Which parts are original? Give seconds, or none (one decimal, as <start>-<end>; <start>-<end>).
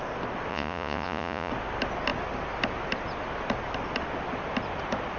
0.0-0.5; 1.5-5.2